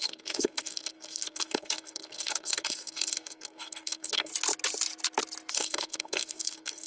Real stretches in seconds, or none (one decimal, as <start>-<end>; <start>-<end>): 4.3-5.5